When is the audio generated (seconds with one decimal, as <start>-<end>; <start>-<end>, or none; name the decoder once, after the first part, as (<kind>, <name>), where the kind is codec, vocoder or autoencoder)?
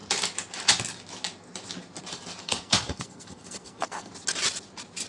2.4-4.1 (codec, SNAC)